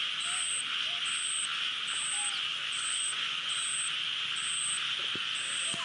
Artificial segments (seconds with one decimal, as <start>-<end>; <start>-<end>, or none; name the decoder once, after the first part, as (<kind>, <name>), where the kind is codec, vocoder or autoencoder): 2.5-3.6 (vocoder, Vocos)